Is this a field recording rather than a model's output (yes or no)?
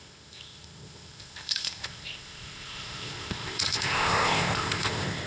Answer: no